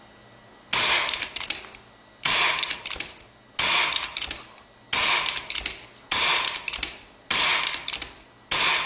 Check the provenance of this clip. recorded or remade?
recorded